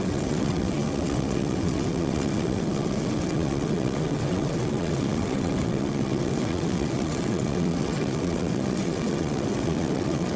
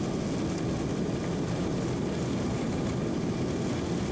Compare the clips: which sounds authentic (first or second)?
second